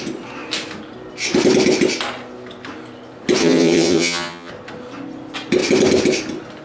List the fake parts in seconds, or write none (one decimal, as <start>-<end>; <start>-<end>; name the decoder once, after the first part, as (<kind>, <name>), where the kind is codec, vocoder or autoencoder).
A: 3.4-4.5 (vocoder, HiFi-GAN)